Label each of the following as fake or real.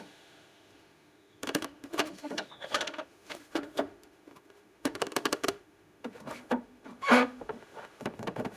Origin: fake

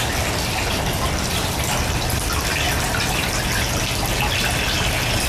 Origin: real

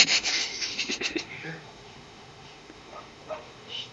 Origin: fake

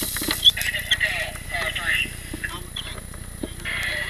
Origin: real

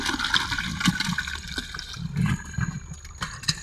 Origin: real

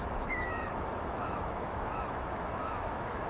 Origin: fake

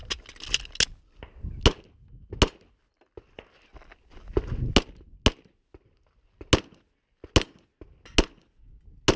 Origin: real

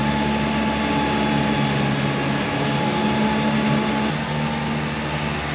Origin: real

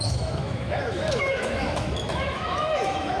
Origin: fake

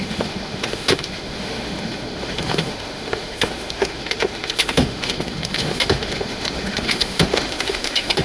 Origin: fake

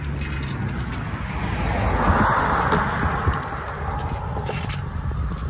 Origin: real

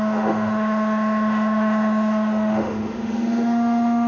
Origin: fake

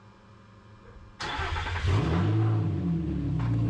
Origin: real